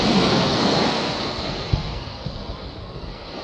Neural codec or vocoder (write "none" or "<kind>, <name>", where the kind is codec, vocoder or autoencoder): codec, SNAC